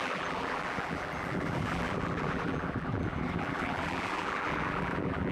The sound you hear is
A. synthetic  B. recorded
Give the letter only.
A